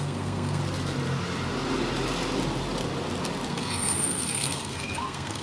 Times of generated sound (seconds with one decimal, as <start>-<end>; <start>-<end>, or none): 0.0-0.6; 3.5-5.4